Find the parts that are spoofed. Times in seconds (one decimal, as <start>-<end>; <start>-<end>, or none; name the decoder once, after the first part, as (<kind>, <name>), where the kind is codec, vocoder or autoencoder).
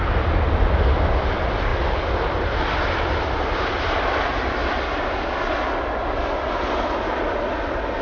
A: none